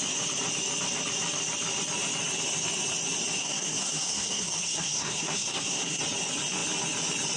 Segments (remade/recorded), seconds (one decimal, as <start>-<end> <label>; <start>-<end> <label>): 0.0-3.4 recorded; 3.4-6.0 remade; 6.0-7.4 recorded